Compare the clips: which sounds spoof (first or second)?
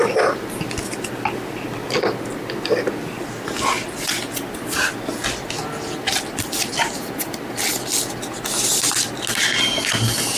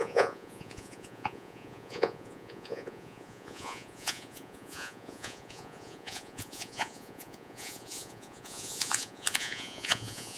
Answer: second